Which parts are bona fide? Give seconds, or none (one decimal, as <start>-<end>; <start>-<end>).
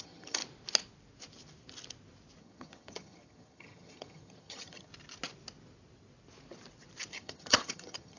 0.4-2.4; 4.9-7.1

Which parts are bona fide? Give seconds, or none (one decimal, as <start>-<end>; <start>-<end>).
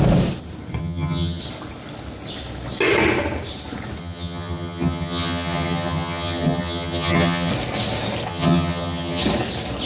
0.0-0.8; 1.4-4.0; 7.5-8.3; 9.2-9.9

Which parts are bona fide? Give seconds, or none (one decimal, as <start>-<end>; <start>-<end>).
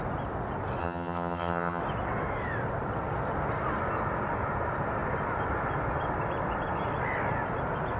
0.0-0.8; 1.8-8.0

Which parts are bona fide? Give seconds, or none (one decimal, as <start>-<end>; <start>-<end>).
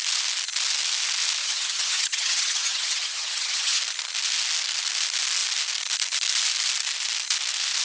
0.0-1.4; 3.8-7.8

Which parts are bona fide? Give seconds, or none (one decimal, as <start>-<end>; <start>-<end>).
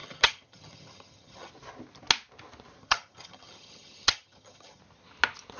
1.5-2.8; 4.8-5.6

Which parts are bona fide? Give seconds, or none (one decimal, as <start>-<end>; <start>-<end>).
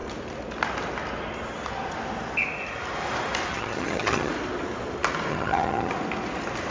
0.0-3.5; 4.3-5.3; 5.9-6.7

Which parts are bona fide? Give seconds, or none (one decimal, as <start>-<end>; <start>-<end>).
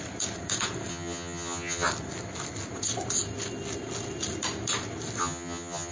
0.0-0.9; 1.9-5.2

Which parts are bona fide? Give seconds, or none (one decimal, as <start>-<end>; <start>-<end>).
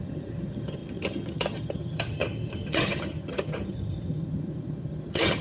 none